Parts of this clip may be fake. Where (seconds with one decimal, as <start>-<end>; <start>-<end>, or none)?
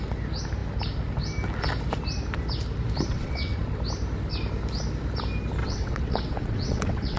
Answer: 3.1-3.6; 5.6-7.2